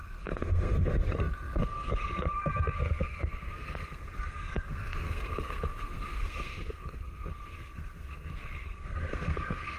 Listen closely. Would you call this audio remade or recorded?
remade